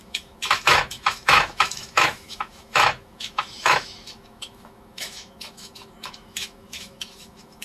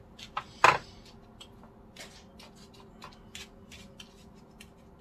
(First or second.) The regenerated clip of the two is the first